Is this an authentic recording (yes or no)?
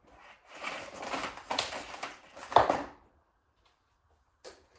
yes